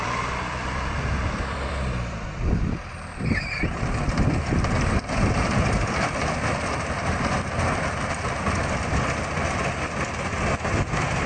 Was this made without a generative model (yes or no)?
no